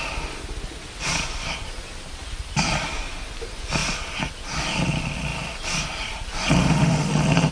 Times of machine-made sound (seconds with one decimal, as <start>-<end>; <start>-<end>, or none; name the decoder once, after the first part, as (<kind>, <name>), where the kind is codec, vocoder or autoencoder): 6.6-7.1 (autoencoder, DAC-VAE)